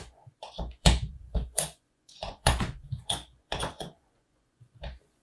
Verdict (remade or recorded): remade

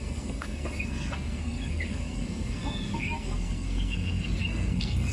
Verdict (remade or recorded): remade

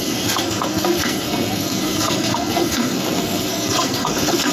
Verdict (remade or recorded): remade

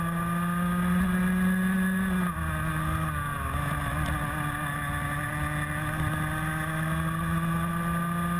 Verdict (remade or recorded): recorded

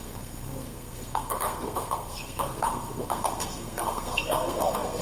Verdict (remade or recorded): remade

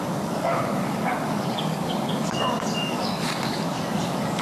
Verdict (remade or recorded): remade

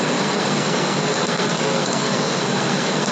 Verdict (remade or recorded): remade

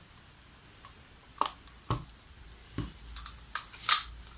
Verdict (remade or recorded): recorded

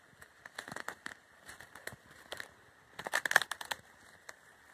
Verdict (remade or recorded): recorded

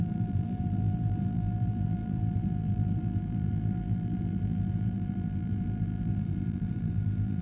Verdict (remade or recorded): remade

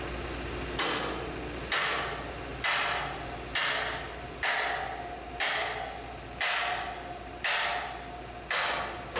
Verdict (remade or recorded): recorded